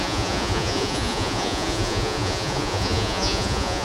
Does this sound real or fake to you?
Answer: fake